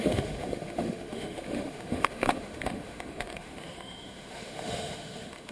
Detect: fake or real fake